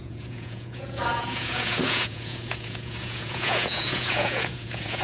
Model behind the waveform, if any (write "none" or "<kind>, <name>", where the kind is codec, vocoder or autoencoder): vocoder, Vocos